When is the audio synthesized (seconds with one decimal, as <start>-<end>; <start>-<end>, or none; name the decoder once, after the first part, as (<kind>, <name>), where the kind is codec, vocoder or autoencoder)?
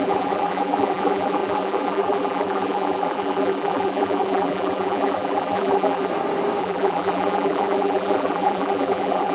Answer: 0.0-6.1 (vocoder, BigVGAN v2); 6.6-9.3